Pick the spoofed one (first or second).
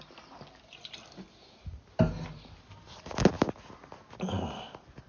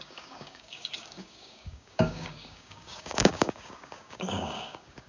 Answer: second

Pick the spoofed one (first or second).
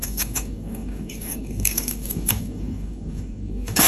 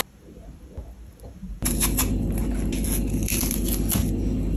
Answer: first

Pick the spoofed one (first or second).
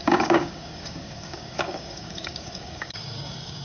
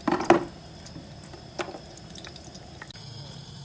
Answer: first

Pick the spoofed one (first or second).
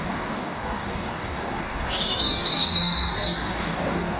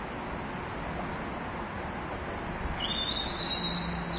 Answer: first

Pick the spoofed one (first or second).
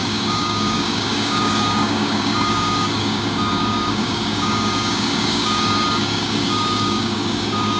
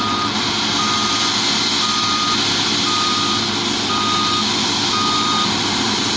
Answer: first